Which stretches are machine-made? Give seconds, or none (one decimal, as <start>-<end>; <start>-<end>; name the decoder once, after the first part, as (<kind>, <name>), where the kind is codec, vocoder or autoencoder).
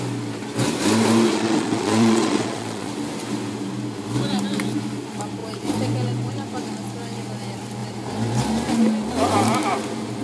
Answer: 1.3-2.9 (vocoder, Vocos)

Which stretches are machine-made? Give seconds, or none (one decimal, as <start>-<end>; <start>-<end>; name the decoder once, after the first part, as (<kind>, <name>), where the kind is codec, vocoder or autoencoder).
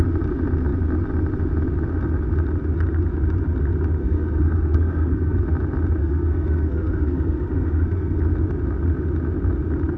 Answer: 4.0-5.4 (codec, SNAC); 6.0-8.2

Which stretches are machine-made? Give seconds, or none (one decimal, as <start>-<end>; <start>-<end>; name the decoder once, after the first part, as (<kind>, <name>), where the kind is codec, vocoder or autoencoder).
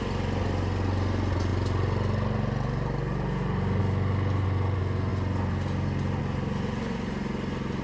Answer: none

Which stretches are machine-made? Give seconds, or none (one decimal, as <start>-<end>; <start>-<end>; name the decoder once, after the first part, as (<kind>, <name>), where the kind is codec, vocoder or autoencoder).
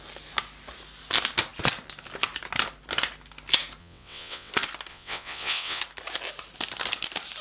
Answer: 3.8-4.5 (vocoder, WaveNeXt); 4.9-5.8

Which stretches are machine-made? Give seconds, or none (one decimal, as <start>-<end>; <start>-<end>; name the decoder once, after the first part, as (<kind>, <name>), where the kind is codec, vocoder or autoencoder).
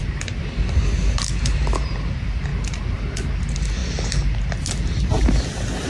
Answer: none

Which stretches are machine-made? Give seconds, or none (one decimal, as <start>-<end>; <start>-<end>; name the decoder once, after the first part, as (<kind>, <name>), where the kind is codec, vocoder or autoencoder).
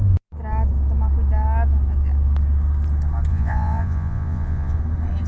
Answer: 3.3-4.8 (vocoder, Vocos)